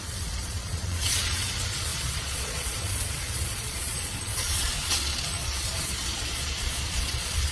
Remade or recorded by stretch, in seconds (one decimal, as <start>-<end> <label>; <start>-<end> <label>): 0.0-7.5 remade